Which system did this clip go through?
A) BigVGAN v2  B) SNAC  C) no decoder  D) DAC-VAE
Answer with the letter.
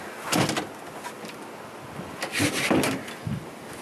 C